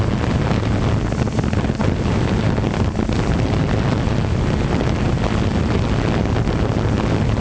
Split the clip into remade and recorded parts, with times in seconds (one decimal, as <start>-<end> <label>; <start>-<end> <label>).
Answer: 0.0-7.4 recorded